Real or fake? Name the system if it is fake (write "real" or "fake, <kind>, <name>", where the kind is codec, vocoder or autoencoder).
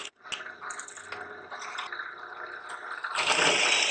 real